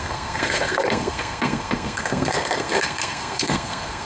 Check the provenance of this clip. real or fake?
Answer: fake